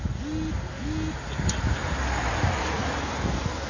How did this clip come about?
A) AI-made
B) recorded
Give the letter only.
B